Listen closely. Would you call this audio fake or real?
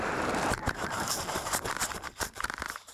fake